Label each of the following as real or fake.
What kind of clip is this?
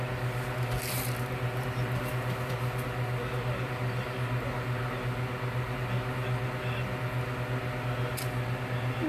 real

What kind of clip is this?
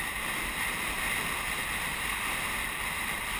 real